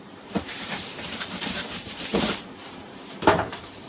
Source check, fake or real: fake